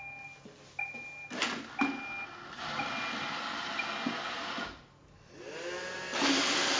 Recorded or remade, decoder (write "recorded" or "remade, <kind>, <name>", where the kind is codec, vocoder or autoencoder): recorded